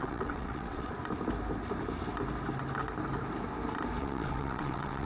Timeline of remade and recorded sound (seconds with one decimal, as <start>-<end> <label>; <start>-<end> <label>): 0.0-0.9 remade; 0.9-4.0 recorded; 4.0-5.1 remade